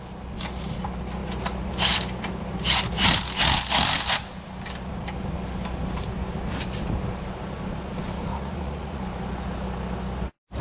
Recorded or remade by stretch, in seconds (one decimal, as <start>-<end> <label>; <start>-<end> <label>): 0.0-8.3 recorded; 8.3-9.0 remade; 9.0-10.6 recorded